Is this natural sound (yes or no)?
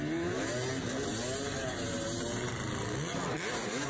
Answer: yes